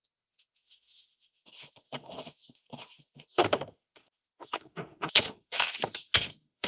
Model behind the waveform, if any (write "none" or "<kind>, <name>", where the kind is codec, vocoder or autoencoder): autoencoder, DAC-VAE